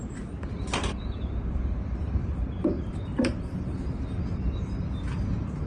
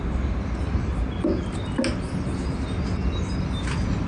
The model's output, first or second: first